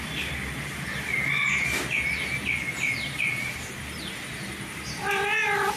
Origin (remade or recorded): recorded